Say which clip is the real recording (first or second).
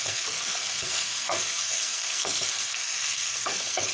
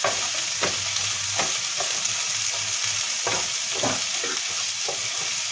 second